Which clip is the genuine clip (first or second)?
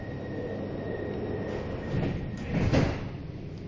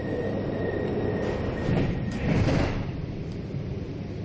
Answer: first